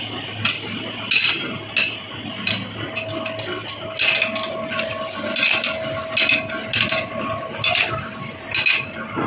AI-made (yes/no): no